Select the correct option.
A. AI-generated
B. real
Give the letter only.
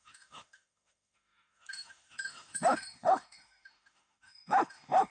A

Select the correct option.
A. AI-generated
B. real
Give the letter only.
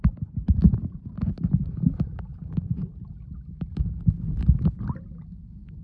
B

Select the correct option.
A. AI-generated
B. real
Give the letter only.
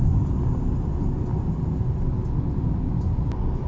B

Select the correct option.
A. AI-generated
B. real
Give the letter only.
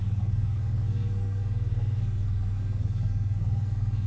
A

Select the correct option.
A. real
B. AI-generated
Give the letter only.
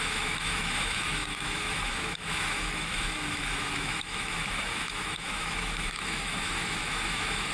B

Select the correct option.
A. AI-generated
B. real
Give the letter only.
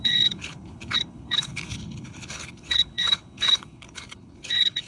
A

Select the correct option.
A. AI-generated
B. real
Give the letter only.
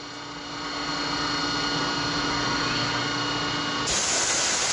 B